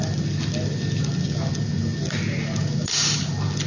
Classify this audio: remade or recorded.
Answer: recorded